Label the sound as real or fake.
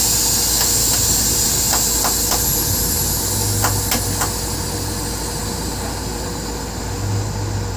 real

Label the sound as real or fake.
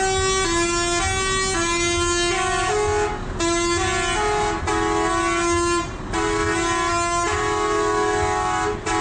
real